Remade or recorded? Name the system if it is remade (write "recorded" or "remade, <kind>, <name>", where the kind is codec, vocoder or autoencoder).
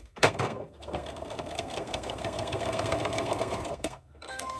remade, codec, SNAC